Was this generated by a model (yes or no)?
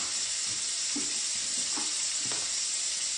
no